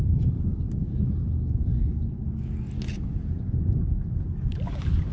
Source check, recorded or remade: recorded